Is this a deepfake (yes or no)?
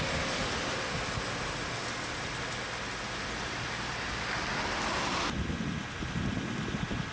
no